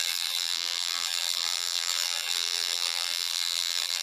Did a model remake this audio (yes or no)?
yes